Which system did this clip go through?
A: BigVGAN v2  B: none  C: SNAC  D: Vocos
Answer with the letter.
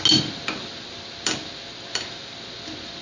B